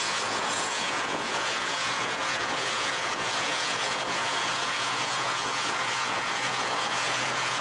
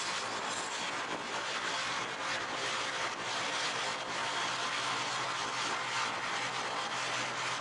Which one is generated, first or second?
first